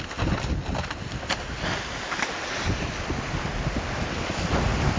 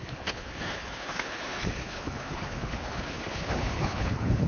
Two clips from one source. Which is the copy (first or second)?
second